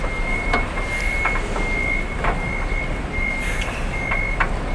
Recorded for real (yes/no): yes